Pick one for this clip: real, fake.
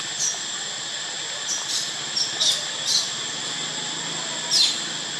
real